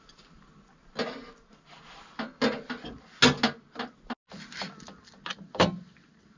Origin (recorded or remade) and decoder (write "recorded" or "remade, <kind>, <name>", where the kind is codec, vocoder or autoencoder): recorded